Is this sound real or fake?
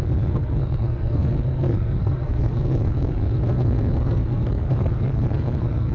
fake